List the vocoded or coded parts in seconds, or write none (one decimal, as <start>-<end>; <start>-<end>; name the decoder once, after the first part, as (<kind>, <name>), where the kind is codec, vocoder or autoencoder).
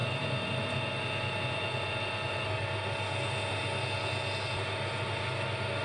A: none